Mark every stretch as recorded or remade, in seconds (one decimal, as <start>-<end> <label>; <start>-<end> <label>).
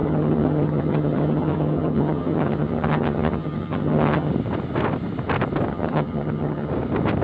0.0-4.3 remade; 4.3-5.7 recorded; 5.7-6.7 remade; 6.7-7.2 recorded